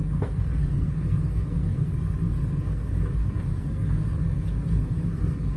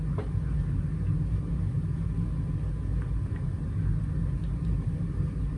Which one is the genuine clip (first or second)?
second